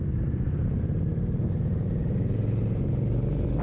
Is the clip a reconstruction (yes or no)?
no